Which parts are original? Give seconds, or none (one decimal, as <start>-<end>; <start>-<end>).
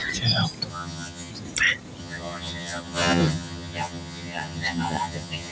0.0-0.7; 1.3-2.0